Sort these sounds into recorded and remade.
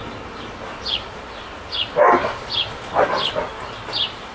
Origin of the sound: recorded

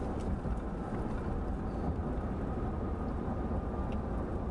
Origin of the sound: recorded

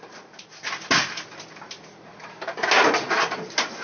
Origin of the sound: recorded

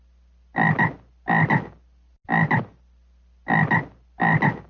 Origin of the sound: recorded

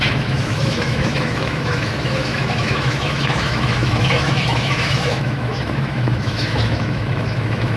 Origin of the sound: remade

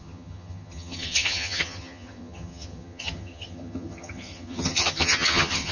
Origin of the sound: remade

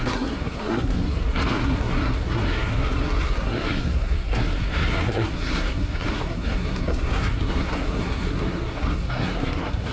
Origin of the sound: remade